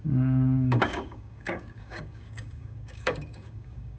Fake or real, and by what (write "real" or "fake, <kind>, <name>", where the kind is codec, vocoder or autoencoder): fake, codec, DAC